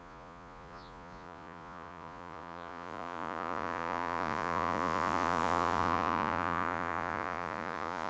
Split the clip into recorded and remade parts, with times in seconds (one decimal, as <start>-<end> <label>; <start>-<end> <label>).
0.0-8.1 remade